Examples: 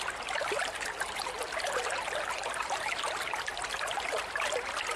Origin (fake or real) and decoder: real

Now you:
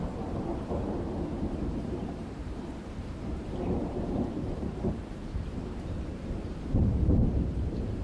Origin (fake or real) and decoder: fake, vocoder, BigVGAN v2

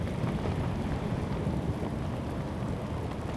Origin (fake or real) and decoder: real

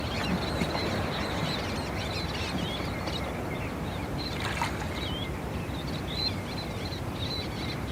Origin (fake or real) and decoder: real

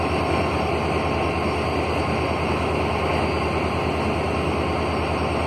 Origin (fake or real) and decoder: real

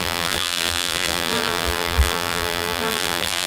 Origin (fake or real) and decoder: fake, vocoder, BigVGAN v2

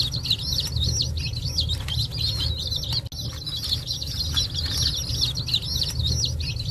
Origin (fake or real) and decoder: real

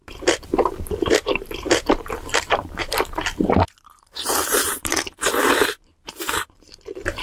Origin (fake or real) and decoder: fake, vocoder, BigVGAN v2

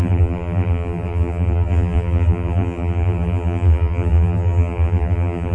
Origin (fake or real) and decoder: fake, vocoder, BigVGAN v2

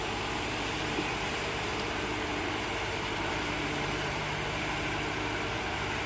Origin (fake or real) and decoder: fake, vocoder, BigVGAN v2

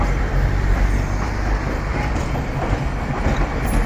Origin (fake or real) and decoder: fake, vocoder, BigVGAN v2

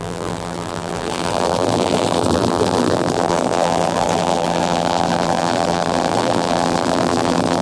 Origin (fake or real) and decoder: fake, vocoder, BigVGAN v2